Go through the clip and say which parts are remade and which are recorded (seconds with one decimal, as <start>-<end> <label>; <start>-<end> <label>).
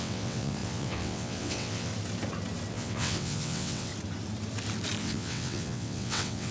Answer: 0.0-1.9 remade; 1.9-2.7 recorded; 2.7-3.9 remade; 3.9-5.0 recorded; 5.0-6.5 remade